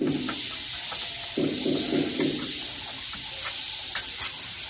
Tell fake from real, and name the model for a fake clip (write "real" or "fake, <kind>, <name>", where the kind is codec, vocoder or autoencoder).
real